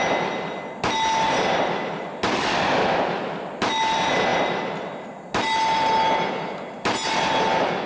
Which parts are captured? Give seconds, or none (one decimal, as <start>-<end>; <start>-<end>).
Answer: 0.0-7.9